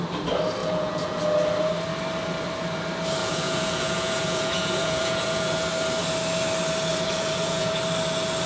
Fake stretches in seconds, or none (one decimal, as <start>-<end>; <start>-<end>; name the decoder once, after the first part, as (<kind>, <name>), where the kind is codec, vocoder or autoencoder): 0.6-1.2 (vocoder, Vocos); 3.2-5.7; 6.9-7.8